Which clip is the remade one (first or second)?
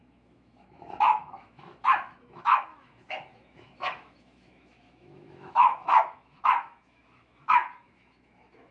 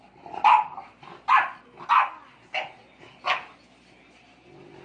first